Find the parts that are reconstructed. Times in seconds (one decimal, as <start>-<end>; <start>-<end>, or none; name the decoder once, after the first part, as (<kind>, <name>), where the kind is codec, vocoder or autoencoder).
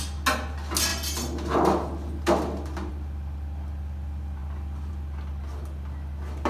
none